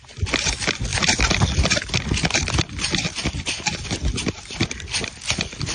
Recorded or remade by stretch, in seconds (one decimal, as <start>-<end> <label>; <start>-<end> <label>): 0.0-5.7 recorded

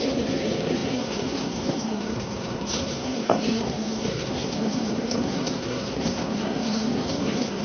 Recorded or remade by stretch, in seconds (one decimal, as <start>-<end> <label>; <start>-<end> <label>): 0.0-7.6 remade